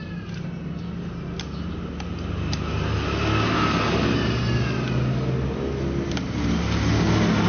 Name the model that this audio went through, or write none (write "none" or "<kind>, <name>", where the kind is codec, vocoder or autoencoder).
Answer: none